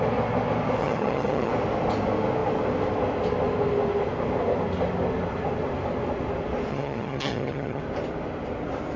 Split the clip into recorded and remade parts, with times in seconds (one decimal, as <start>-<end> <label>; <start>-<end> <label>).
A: 0.0-0.8 recorded; 0.8-1.5 remade; 1.5-6.7 recorded; 6.7-7.8 remade; 7.8-9.0 recorded